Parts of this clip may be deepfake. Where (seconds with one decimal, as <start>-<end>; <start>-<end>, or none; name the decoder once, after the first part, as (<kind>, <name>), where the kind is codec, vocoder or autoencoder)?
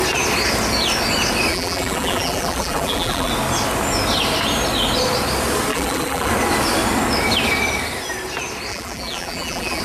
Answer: 1.5-3.3 (vocoder, BigVGAN v2); 5.7-6.3; 8.7-9.8